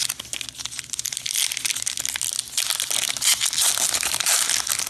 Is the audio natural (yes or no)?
yes